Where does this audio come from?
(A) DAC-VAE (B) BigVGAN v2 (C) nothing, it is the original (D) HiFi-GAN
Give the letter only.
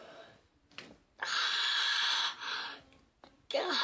C